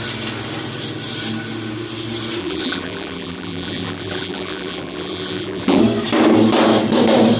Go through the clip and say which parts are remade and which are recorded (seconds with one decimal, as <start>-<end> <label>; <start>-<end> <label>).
0.0-2.4 recorded; 2.4-5.8 remade; 5.8-7.4 recorded